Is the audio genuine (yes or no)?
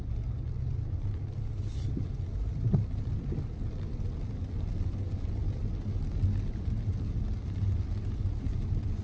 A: yes